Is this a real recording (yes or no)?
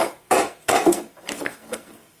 no